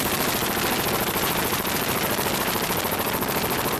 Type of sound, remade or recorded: remade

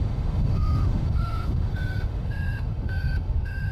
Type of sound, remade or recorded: remade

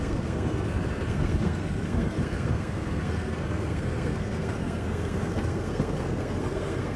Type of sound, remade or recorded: remade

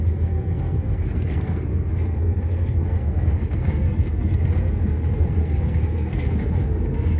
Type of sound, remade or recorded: remade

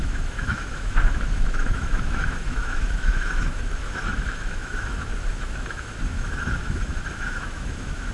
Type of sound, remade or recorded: remade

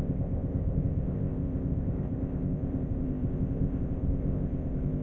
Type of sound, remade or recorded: remade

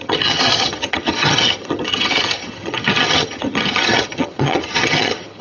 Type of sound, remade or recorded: remade